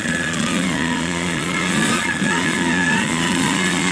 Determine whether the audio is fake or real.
fake